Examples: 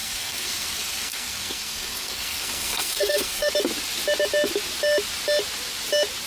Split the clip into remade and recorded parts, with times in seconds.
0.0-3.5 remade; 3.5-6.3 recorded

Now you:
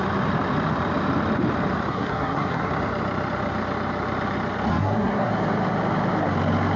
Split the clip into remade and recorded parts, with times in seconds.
0.0-1.9 recorded; 1.9-2.7 remade; 2.7-4.7 recorded; 4.7-5.3 remade; 5.3-6.8 recorded

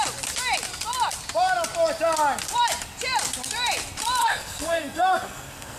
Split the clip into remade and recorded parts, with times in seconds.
0.0-4.2 recorded; 4.2-5.8 remade

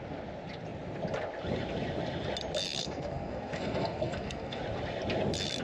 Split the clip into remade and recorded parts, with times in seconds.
0.0-2.8 recorded; 2.8-4.6 remade; 4.6-5.6 recorded

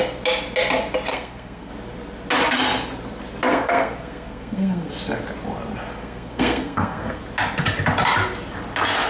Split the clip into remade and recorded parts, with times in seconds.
0.0-1.1 recorded; 1.1-1.7 remade; 1.7-3.5 recorded; 3.5-4.9 remade; 4.9-6.0 recorded; 6.0-7.2 remade; 7.2-9.1 recorded

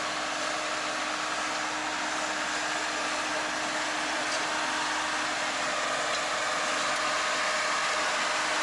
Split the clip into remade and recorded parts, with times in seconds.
0.0-8.6 recorded